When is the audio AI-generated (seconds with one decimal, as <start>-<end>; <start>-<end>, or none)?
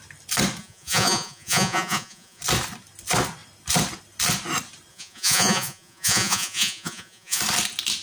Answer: 0.6-2.4; 4.9-7.4